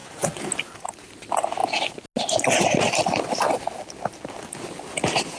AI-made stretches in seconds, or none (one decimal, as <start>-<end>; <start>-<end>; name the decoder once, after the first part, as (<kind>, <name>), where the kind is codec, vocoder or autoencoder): none